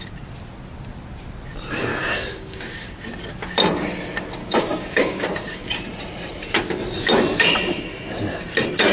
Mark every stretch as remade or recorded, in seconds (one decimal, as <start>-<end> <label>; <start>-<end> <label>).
0.0-1.9 recorded; 1.9-3.1 remade; 3.1-4.4 recorded; 4.4-5.8 remade; 5.8-8.9 recorded

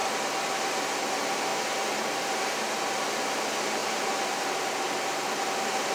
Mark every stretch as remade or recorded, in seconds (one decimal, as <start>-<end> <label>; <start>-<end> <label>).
0.0-3.8 recorded; 3.8-4.4 remade; 4.4-5.9 recorded

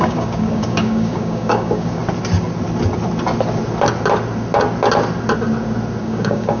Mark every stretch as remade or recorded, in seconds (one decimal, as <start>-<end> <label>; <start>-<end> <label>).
0.0-2.0 remade; 2.0-6.0 recorded; 6.0-6.6 remade